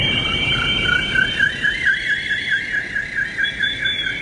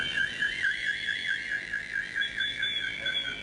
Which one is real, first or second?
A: first